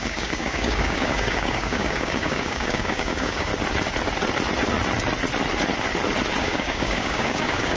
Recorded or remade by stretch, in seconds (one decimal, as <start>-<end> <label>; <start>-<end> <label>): 0.0-3.5 remade; 3.5-6.4 recorded; 6.4-7.8 remade